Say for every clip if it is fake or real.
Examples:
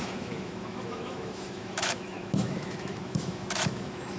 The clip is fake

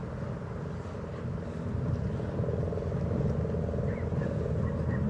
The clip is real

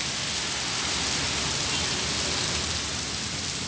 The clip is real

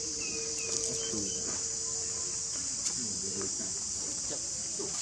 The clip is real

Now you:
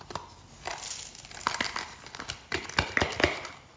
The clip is real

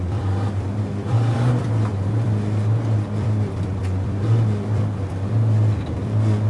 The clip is fake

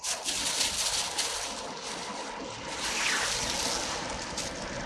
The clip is real